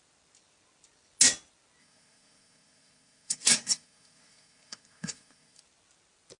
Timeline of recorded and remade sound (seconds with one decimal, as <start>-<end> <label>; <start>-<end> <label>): 0.0-1.8 recorded; 1.8-5.6 remade; 5.6-6.4 recorded